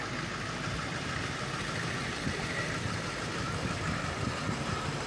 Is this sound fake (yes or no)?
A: yes